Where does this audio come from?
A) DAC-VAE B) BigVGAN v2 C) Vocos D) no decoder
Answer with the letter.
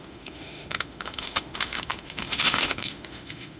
A